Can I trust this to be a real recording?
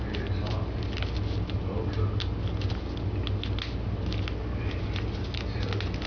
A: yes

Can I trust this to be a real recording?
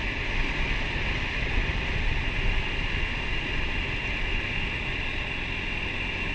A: yes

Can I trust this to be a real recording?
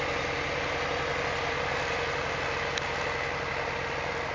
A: yes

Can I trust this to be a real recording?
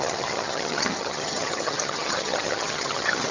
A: no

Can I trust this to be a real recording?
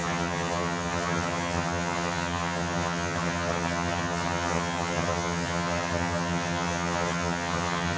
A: no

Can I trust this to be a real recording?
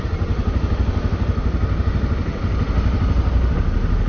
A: yes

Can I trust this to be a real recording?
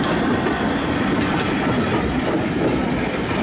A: yes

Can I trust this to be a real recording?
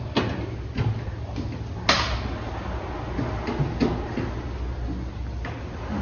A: yes